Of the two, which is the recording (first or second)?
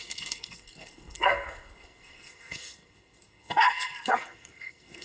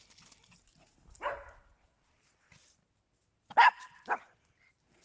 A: second